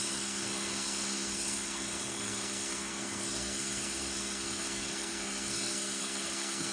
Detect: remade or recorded remade